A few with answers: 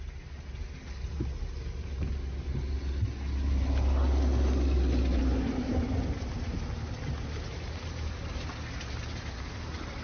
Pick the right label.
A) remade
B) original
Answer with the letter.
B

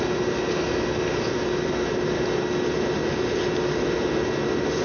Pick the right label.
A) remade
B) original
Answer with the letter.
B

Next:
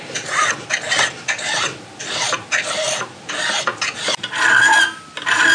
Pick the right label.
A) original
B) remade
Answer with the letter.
A